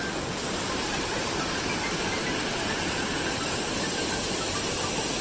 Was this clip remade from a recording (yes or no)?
no